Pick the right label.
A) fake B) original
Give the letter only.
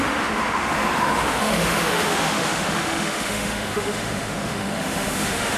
A